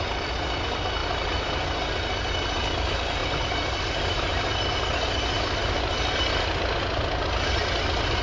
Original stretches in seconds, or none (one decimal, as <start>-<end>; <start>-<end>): 0.0-8.2